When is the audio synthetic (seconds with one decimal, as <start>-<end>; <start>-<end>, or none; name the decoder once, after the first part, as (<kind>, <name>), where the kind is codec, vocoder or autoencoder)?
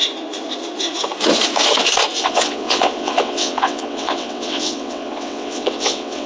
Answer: 2.2-6.3 (vocoder, WaveNeXt)